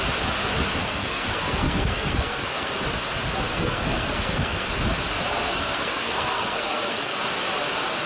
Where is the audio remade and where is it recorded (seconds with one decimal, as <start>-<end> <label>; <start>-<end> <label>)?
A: 0.0-0.8 recorded; 0.8-2.7 remade; 2.7-3.5 recorded; 3.5-4.7 remade; 4.7-5.5 recorded; 5.5-7.2 remade; 7.2-8.1 recorded